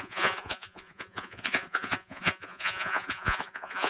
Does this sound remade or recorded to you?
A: remade